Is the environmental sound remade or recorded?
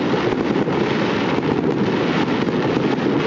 recorded